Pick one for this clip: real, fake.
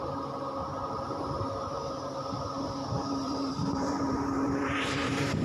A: fake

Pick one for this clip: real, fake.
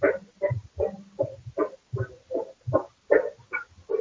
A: real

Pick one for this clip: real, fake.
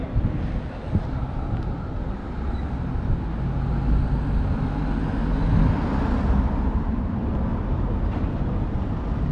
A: real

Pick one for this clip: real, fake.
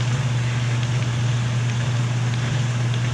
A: real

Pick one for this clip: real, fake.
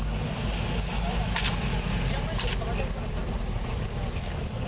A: real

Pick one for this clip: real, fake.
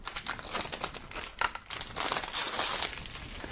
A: real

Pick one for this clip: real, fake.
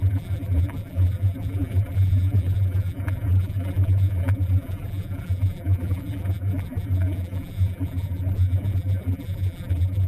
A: fake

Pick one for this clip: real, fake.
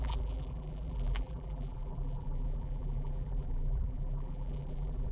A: fake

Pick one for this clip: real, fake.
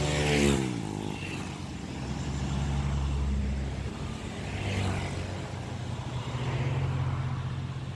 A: real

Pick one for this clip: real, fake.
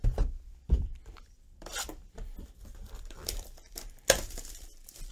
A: fake